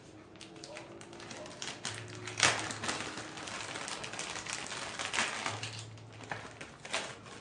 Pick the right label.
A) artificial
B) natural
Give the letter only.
B